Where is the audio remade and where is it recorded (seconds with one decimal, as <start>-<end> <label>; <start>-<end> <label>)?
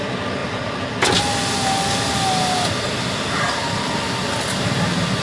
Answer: 0.0-5.2 recorded